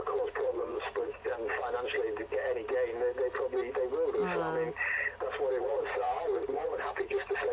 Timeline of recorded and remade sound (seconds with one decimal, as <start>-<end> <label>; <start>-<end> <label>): 0.0-1.2 remade; 1.2-5.6 recorded; 5.6-7.5 remade